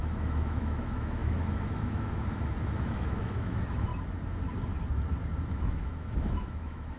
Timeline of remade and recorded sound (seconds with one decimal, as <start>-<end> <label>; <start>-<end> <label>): 0.0-3.9 remade; 3.9-5.5 recorded; 5.5-7.0 remade